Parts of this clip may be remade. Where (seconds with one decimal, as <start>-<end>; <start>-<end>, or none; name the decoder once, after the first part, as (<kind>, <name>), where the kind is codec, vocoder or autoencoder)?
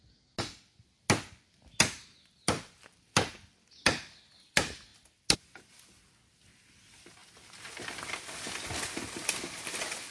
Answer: none